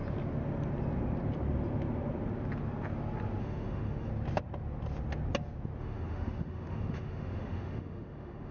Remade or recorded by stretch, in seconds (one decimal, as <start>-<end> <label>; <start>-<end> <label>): 0.0-3.4 recorded; 3.4-4.1 remade; 4.1-5.8 recorded; 5.8-8.5 remade